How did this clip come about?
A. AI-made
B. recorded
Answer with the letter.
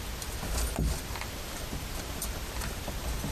B